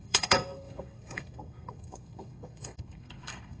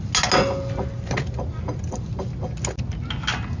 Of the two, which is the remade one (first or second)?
first